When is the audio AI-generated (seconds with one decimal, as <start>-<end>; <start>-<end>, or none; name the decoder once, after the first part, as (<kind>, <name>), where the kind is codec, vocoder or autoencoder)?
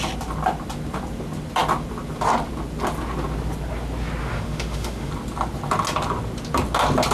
4.2-5.1 (autoencoder, DAC-VAE)